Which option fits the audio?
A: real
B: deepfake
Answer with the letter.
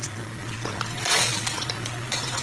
B